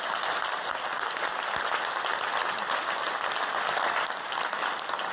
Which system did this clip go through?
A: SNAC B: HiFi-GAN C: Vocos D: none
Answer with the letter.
D